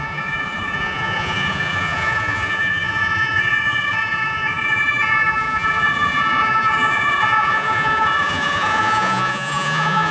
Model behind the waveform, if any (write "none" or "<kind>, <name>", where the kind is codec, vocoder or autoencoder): vocoder, Vocos